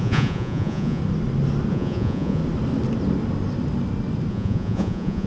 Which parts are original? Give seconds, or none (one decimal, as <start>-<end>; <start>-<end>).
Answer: 1.0-1.7; 2.4-4.3